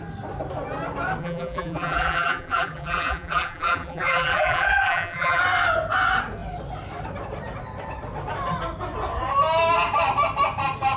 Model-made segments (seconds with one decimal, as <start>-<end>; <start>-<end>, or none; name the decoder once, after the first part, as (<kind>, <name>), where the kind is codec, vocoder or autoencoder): 1.2-5.4 (vocoder, BigVGAN v2)

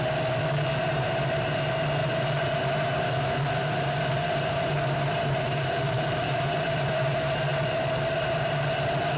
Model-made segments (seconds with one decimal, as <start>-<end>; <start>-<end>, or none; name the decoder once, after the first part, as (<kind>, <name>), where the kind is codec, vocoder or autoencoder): 3.6-6.9 (vocoder, BigVGAN v2)